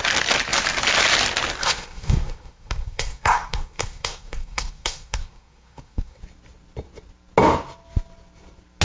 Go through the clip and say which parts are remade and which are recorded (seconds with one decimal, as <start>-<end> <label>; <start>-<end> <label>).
0.0-1.6 recorded; 1.6-6.2 remade; 6.2-8.8 recorded